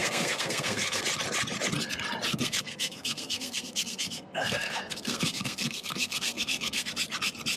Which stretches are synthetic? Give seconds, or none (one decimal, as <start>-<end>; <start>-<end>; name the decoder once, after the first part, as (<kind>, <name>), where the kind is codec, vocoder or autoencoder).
0.0-1.0 (codec, SNAC); 2.3-6.9